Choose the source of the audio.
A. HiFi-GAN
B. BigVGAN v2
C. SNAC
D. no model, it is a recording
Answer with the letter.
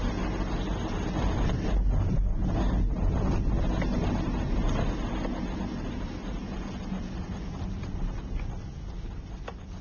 D